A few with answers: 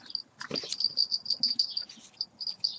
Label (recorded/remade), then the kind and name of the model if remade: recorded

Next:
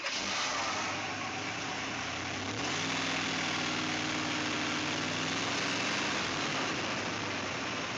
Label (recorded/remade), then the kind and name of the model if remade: recorded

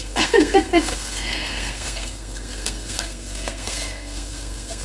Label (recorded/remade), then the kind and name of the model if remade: remade, codec, SNAC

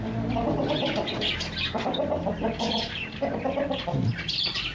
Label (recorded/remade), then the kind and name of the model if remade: recorded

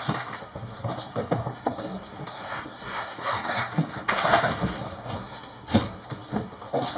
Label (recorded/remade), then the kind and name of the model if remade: remade, codec, SNAC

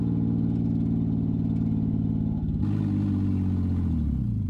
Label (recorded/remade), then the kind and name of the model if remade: recorded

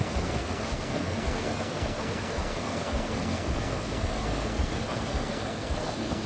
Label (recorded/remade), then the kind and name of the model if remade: remade, codec, SNAC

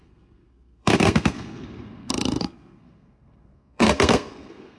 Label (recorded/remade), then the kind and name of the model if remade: remade, codec, SNAC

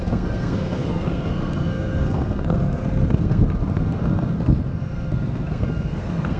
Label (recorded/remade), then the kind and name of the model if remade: remade, codec, SNAC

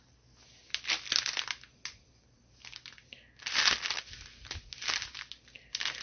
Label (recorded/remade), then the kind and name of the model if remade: recorded